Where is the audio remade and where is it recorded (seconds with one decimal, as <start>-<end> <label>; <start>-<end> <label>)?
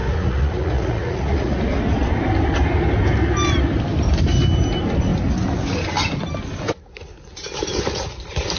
0.0-1.6 remade; 1.6-8.6 recorded